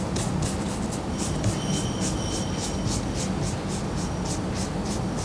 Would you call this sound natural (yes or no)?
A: yes